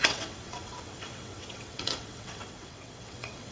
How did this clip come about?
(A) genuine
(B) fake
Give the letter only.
B